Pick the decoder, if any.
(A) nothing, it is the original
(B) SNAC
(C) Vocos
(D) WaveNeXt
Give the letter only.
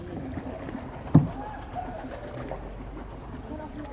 A